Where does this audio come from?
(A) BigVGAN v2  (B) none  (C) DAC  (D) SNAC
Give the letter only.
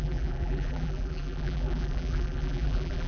A